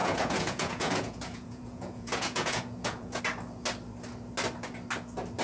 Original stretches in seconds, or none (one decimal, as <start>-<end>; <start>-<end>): 3.2-5.4